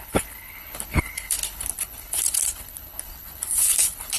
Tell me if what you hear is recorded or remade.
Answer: remade